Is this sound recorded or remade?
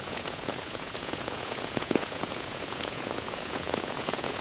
remade